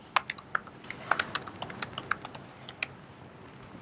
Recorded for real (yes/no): yes